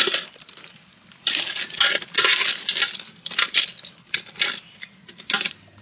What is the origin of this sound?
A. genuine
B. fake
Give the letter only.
A